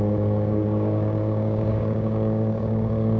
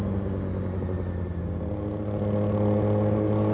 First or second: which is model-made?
first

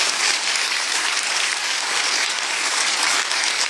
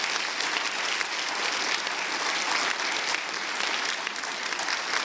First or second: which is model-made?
first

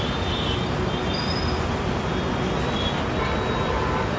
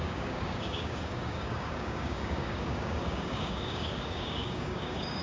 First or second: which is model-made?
second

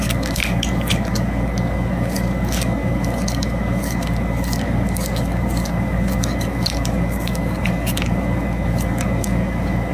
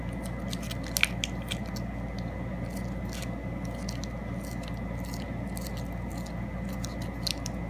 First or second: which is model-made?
first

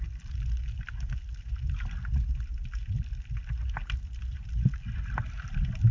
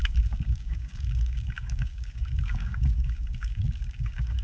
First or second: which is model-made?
second